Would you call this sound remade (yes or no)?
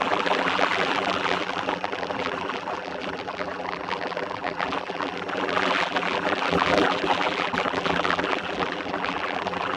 yes